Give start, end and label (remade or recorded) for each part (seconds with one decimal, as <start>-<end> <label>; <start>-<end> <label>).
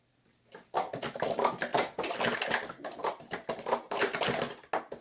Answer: 0.0-5.0 recorded